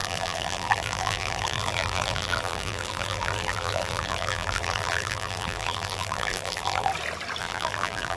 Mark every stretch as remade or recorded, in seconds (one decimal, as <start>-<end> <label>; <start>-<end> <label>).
0.0-6.9 remade; 6.9-7.4 recorded; 7.4-8.2 remade